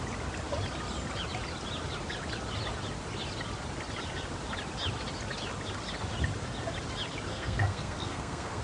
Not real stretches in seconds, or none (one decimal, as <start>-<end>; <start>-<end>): 7.3-8.6